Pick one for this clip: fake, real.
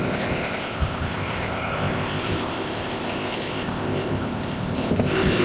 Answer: fake